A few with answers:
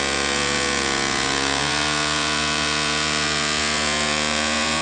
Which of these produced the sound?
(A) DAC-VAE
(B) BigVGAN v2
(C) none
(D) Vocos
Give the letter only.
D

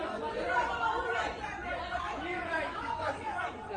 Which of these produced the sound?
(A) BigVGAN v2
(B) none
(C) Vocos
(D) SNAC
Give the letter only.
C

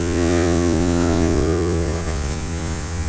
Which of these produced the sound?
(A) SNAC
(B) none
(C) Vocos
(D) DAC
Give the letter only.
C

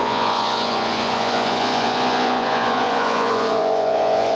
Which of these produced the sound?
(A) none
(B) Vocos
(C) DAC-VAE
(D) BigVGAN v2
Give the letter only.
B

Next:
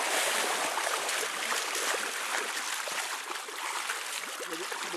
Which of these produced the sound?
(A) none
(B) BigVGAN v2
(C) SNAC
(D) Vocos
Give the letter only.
A